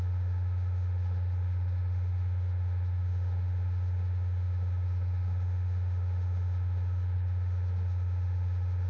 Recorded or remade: remade